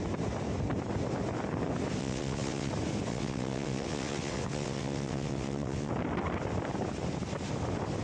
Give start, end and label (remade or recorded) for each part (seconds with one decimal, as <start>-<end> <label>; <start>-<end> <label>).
0.0-2.0 recorded; 2.0-2.7 remade; 2.7-3.1 recorded; 3.1-5.9 remade; 5.9-8.0 recorded